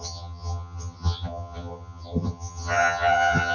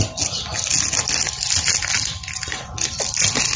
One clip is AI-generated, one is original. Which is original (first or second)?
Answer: second